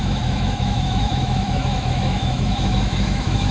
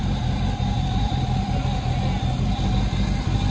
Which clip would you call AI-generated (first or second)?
first